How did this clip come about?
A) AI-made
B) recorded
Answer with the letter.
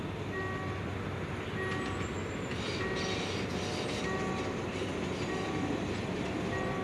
B